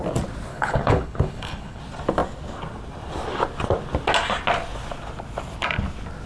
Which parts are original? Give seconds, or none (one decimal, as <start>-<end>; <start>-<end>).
0.0-0.5; 1.8-6.3